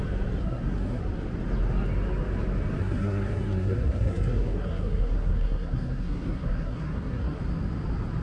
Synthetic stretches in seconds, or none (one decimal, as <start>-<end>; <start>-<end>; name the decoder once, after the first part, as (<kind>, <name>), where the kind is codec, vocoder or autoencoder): 0.4-1.0 (codec, SNAC); 2.8-7.4